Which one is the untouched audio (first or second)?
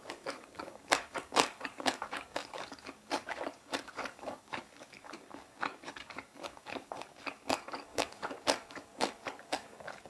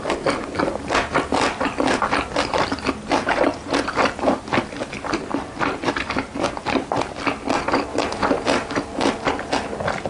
second